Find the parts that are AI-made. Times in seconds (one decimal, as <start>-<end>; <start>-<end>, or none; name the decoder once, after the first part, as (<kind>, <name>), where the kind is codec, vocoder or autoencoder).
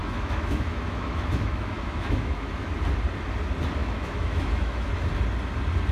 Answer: 0.0-2.7 (autoencoder, DAC-VAE); 3.8-4.9